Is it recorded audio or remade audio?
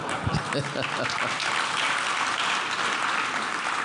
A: recorded